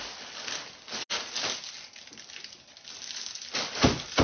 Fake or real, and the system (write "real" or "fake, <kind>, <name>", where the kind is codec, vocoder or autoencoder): real